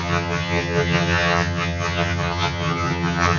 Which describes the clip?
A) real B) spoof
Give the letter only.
B